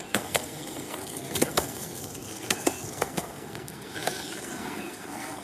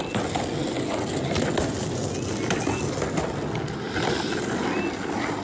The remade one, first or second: first